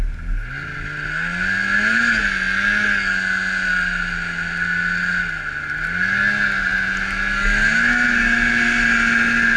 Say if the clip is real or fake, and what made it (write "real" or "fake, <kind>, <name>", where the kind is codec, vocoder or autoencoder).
real